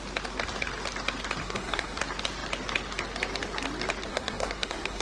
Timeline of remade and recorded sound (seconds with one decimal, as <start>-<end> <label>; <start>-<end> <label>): 0.0-1.4 recorded; 1.4-2.0 remade; 2.0-4.1 recorded; 4.1-5.0 remade